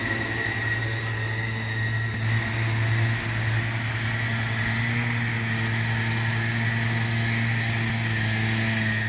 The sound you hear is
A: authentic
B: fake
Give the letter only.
A